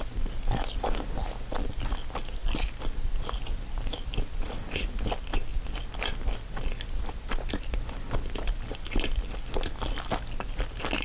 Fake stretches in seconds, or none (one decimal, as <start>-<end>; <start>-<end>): 2.4-3.2